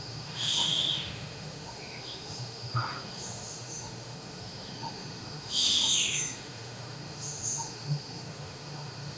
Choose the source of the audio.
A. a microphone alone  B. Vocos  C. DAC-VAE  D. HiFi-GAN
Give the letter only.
C